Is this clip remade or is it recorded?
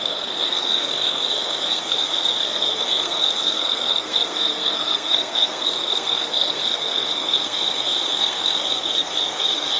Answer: remade